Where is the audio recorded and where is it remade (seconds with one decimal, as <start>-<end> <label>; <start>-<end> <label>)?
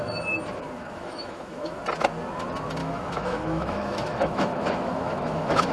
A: 0.0-0.8 recorded; 0.8-1.8 remade; 1.8-2.8 recorded; 2.8-5.7 remade